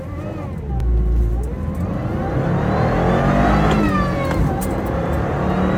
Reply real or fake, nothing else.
real